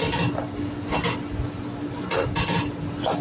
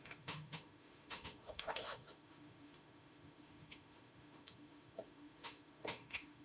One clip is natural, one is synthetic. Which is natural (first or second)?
first